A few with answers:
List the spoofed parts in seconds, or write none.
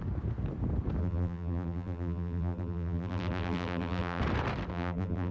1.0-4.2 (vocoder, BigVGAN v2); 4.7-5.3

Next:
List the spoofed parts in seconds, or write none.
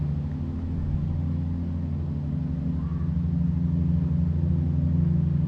none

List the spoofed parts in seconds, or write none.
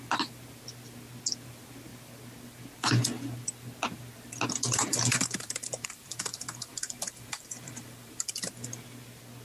4.9-8.3 (vocoder, BigVGAN v2)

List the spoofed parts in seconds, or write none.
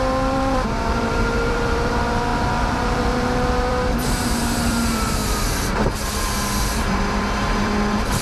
0.0-5.2 (vocoder, BigVGAN v2); 6.6-8.2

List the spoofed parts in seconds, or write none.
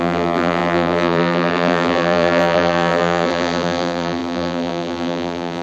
0.0-5.6 (vocoder, BigVGAN v2)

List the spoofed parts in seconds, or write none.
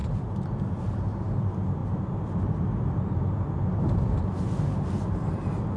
0.0-0.6 (vocoder, BigVGAN v2)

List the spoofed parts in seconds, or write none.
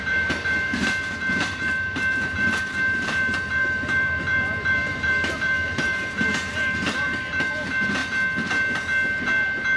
0.0-8.0 (vocoder, BigVGAN v2)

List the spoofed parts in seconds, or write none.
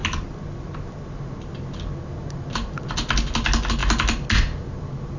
none